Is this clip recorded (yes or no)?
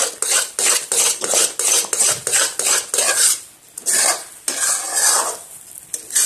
yes